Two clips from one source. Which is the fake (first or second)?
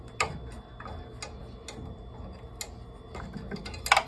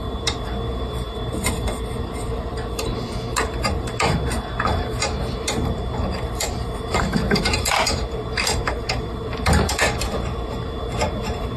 second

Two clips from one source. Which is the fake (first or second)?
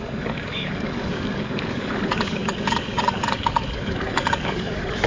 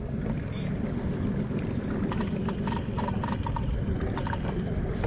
first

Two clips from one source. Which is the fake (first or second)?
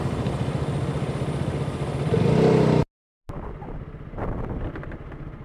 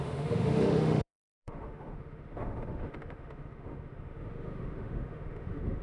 second